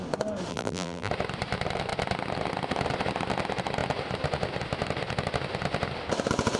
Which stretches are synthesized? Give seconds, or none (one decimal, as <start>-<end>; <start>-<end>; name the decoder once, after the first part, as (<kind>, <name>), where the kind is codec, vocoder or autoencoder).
0.5-1.1 (vocoder, BigVGAN v2)